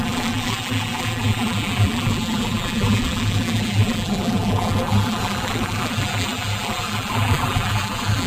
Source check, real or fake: fake